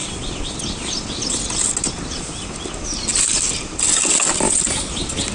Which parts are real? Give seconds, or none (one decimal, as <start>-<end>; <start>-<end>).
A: 0.0-5.3